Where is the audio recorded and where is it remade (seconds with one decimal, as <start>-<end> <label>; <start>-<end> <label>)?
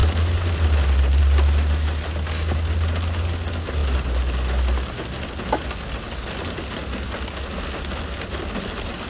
0.0-9.1 recorded